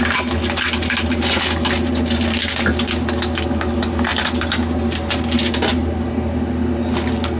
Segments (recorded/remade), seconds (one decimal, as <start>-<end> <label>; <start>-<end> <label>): 0.0-7.4 recorded